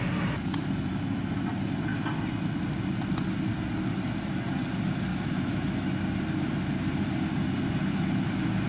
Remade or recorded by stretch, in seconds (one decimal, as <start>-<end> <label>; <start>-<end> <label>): 0.0-5.1 recorded; 5.1-6.0 remade; 6.0-8.7 recorded